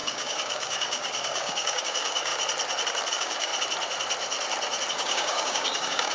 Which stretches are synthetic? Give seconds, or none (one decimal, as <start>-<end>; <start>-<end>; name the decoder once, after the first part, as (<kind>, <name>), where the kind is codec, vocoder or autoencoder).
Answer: 0.0-2.3 (codec, DAC); 3.1-3.5; 4.9-6.1

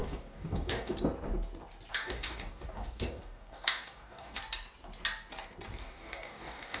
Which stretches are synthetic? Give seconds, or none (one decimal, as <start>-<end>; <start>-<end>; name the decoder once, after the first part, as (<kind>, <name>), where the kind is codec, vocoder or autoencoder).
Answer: 0.0-0.9 (codec, DAC); 1.9-4.4; 5.8-6.8

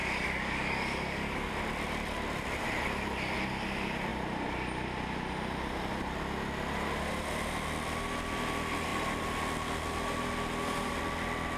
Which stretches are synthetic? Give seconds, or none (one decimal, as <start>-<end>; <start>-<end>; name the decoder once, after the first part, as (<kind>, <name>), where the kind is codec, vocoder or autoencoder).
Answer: 0.0-1.5 (codec, DAC)